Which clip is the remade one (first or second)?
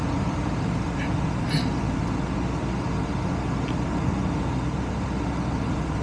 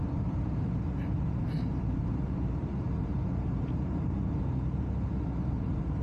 second